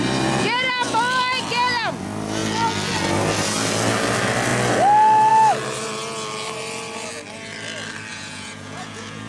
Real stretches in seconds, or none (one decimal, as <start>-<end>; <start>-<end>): 0.0-8.1